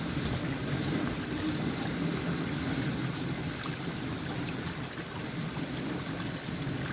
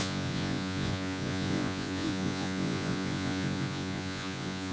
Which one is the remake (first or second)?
second